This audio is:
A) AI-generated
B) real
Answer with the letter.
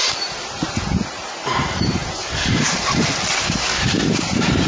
A